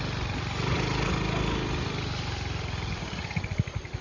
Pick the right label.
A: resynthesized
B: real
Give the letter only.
B